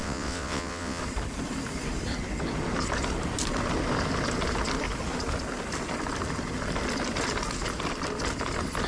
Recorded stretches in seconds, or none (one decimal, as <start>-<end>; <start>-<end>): 1.0-8.9